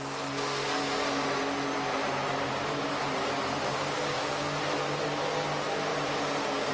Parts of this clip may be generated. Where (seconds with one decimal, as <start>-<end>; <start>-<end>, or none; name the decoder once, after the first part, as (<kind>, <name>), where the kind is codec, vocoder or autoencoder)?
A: 3.7-4.6 (codec, DAC)